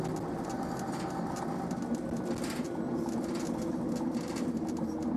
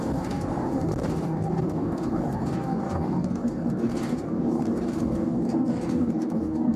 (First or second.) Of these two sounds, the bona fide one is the first